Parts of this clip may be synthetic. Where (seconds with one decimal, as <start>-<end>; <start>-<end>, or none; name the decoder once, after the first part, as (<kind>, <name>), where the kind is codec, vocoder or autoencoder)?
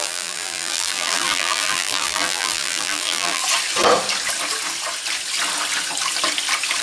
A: 0.0-3.4 (vocoder, BigVGAN v2)